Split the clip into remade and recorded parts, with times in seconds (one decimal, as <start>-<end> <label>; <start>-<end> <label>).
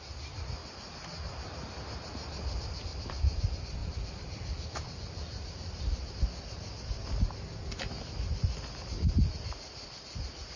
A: 0.0-2.9 recorded; 2.9-3.4 remade; 3.4-3.8 recorded; 3.8-6.1 remade; 6.1-10.6 recorded